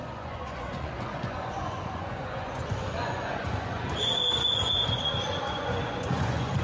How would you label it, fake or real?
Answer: fake